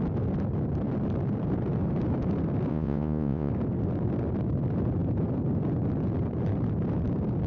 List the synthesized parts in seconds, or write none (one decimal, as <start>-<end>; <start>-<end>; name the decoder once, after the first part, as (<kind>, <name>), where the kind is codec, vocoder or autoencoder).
2.7-3.5 (vocoder, Vocos)